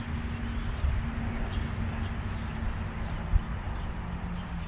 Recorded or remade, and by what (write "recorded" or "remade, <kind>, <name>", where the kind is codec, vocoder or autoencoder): recorded